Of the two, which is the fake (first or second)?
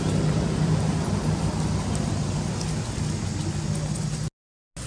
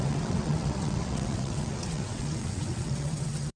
second